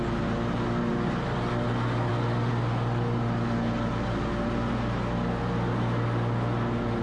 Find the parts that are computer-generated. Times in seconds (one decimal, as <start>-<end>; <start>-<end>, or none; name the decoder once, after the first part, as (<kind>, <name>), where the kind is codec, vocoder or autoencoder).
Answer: none